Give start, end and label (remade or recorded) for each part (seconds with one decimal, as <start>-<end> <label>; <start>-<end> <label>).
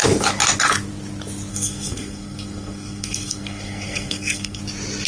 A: 0.0-1.5 recorded; 1.5-4.6 remade; 4.6-5.1 recorded